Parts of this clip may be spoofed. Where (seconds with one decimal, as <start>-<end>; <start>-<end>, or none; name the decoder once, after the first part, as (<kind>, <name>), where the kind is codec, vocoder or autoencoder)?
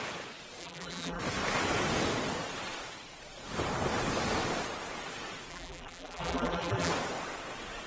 0.6-1.2 (vocoder, BigVGAN v2); 5.5-6.9